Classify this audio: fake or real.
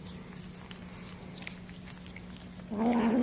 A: real